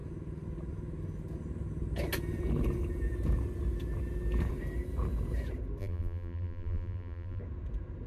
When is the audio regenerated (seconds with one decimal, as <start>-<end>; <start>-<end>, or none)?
5.8-7.4